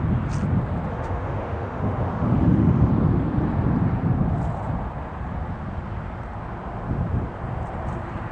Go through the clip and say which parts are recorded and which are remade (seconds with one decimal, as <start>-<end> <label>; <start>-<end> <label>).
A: 0.0-0.9 recorded; 0.9-2.9 remade; 2.9-8.3 recorded